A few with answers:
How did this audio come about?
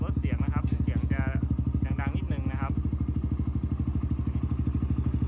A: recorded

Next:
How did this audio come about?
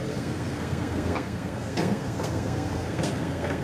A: remade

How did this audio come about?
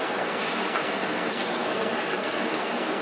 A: remade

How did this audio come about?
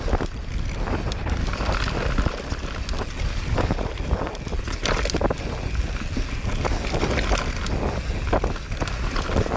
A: recorded